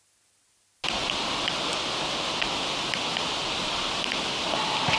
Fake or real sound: real